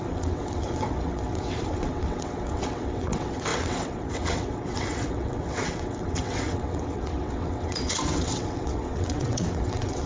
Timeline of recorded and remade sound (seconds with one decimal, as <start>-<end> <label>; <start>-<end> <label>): 0.0-10.1 remade